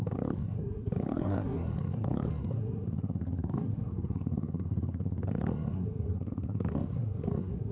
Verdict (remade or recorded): remade